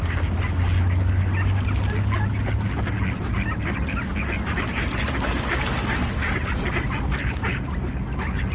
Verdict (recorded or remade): recorded